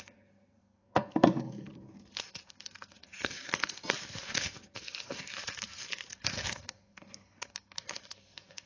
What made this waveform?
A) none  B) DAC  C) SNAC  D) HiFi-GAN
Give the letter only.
C